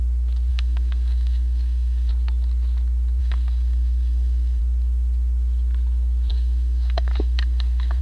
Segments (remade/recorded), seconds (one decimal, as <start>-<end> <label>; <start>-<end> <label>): 0.0-0.5 recorded; 0.5-2.1 remade; 2.1-3.2 recorded; 3.2-4.6 remade; 4.6-6.3 recorded; 6.3-8.0 remade